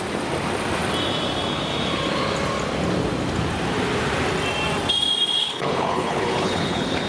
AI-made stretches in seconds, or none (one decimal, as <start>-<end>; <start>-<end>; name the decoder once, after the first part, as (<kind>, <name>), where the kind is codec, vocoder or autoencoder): 5.4-7.1 (codec, HILCodec)